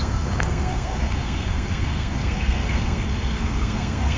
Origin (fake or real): fake